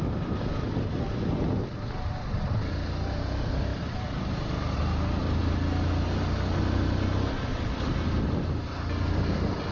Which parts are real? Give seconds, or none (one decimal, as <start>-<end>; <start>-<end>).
0.0-3.7; 4.8-9.7